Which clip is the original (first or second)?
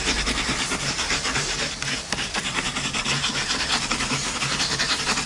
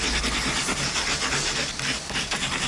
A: second